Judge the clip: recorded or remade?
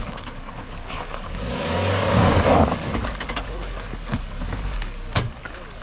remade